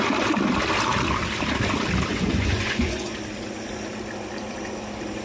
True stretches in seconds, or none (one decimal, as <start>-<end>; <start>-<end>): 0.0-2.1; 3.1-5.2